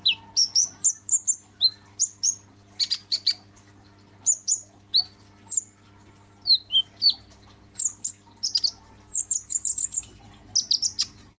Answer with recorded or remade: recorded